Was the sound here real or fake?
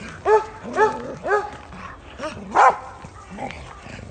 real